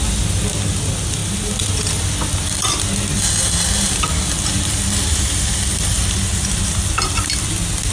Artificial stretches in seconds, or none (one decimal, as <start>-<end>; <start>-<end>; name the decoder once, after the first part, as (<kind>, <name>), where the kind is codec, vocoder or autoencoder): none